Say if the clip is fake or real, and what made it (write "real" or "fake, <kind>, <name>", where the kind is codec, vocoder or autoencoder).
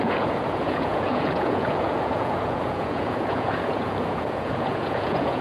fake, vocoder, Vocos